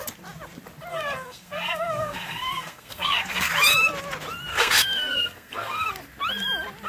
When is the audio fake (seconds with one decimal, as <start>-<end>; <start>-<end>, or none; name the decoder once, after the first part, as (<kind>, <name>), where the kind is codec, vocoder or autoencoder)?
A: 0.9-3.5 (codec, SNAC); 4.5-5.9